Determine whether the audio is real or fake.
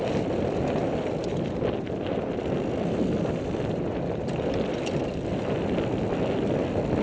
real